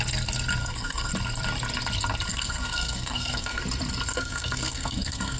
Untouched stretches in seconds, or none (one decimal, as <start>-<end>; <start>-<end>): 0.0-0.6; 1.1-2.3; 3.6-4.1